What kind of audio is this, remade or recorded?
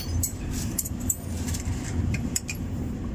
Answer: remade